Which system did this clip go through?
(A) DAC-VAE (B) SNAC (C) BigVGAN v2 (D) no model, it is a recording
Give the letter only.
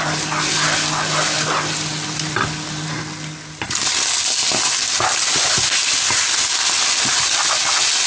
D